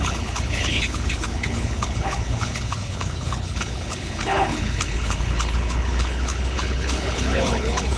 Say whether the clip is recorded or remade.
remade